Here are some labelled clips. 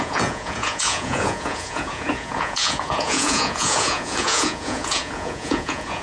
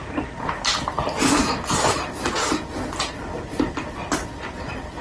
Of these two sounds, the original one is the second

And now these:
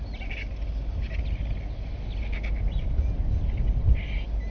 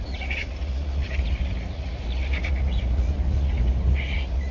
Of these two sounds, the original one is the first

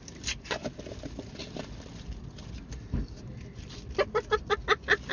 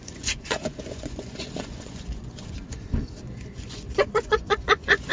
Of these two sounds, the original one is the first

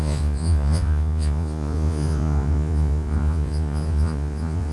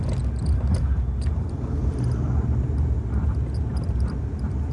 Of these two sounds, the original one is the second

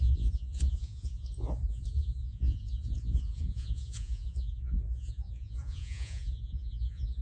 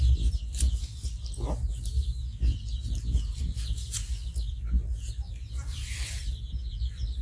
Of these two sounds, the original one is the second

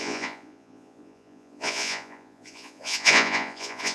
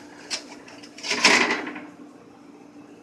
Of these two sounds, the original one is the second